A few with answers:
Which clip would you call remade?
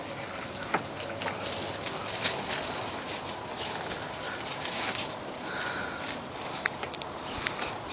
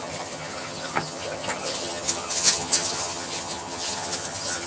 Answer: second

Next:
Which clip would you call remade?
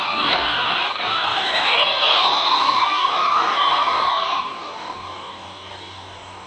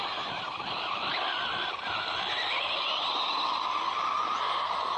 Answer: first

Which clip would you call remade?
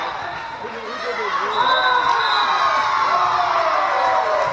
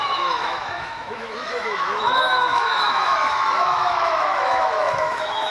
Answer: second